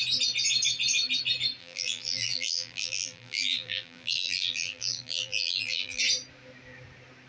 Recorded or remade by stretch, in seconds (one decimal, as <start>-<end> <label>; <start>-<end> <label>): 0.0-1.6 recorded; 1.6-6.0 remade; 6.0-7.3 recorded